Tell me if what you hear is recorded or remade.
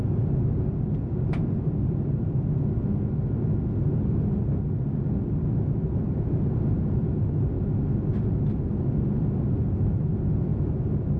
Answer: recorded